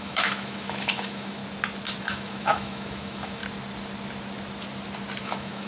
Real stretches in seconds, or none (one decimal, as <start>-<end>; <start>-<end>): 1.4-2.0; 3.4-5.2